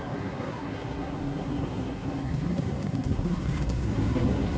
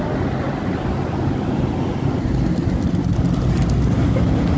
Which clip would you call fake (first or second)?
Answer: first